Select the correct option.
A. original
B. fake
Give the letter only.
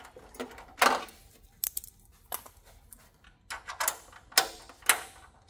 A